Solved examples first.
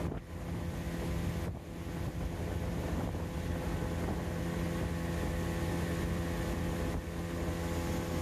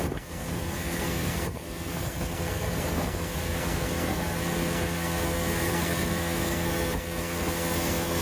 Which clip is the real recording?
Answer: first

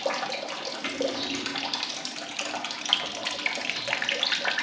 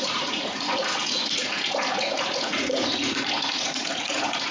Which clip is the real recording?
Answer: first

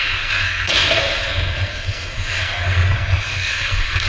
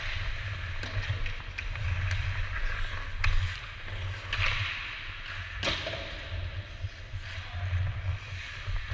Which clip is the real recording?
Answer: second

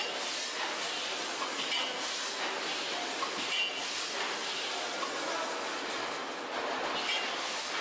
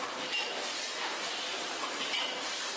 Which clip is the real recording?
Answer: first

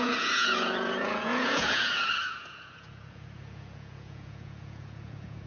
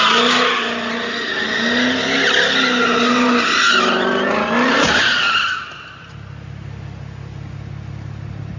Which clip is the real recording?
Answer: second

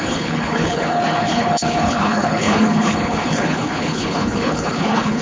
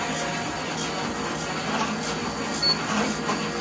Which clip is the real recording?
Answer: second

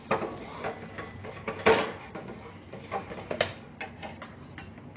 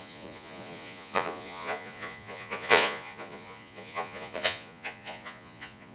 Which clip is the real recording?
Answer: first